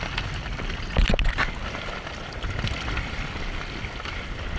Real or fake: real